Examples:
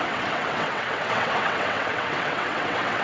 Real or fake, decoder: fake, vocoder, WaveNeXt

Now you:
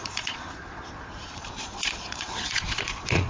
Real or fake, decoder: fake, vocoder, Vocos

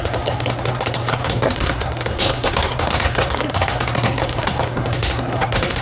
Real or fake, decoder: fake, codec, SNAC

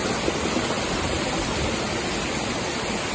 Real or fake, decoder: real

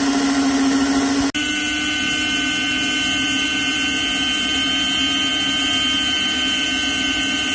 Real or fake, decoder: real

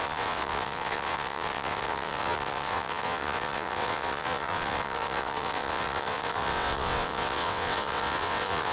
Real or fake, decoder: fake, vocoder, WaveNeXt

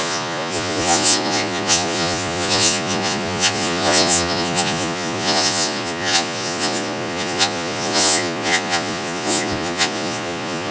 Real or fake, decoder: fake, vocoder, Vocos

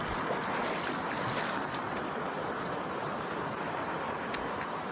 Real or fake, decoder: real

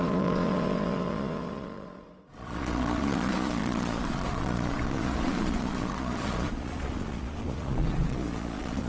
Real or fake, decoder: fake, vocoder, Vocos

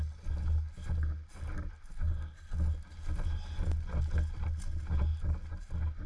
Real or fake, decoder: real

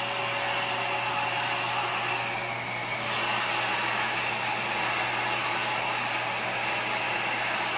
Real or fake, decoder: real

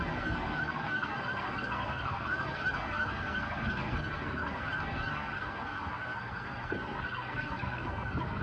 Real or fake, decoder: fake, codec, SNAC